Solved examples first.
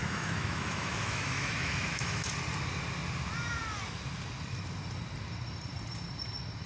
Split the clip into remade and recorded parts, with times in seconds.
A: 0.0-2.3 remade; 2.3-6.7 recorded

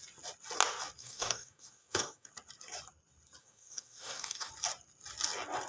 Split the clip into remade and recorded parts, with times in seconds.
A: 0.0-1.0 recorded; 1.0-2.3 remade; 2.3-3.4 recorded; 3.4-4.5 remade; 4.5-5.7 recorded